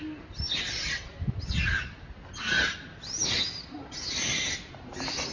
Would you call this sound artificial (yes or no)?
no